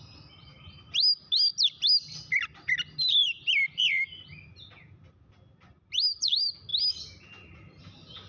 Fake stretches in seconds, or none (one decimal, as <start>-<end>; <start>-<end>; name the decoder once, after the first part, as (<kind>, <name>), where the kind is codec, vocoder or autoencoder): 3.2-3.8 (vocoder, BigVGAN v2)